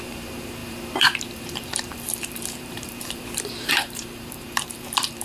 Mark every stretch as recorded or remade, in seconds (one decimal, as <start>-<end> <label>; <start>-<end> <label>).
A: 0.0-5.2 remade